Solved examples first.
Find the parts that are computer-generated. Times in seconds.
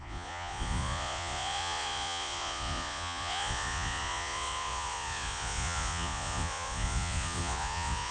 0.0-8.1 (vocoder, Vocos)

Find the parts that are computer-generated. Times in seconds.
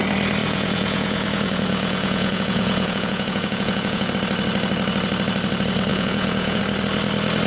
0.4-4.1 (vocoder, Vocos); 5.9-6.6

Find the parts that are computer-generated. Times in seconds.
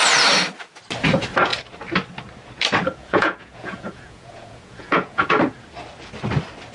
3.0-5.3 (vocoder, Vocos)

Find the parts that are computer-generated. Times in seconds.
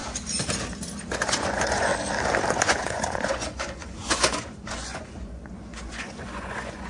1.0-1.9 (vocoder, Vocos); 2.5-6.9